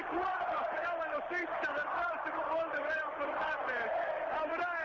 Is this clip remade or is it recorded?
recorded